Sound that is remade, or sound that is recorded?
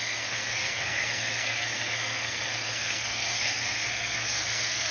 remade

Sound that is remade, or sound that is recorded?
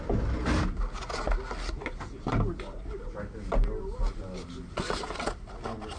recorded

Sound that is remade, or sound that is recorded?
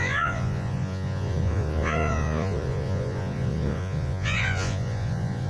remade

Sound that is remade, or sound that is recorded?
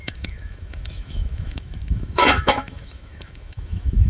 remade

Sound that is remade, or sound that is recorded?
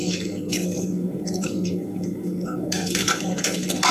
remade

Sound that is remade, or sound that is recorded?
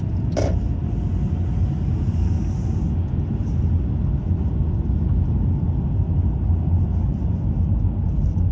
recorded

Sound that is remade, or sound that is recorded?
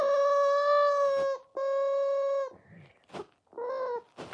recorded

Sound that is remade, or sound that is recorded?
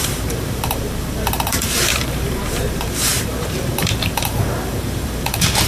remade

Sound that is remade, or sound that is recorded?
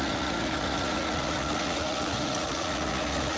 remade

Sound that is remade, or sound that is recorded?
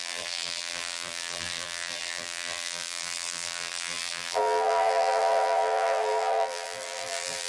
remade